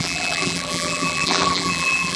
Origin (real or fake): fake